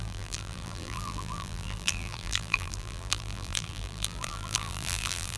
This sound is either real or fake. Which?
fake